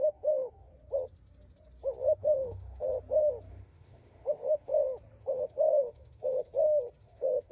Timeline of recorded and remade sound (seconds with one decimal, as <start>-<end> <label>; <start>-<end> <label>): 0.0-0.7 remade; 0.7-2.2 recorded; 2.2-2.9 remade; 2.9-3.5 recorded; 3.5-4.7 remade; 4.7-5.2 recorded; 5.2-6.5 remade; 6.5-7.0 recorded; 7.0-7.5 remade